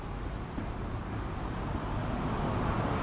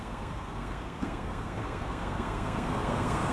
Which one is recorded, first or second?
first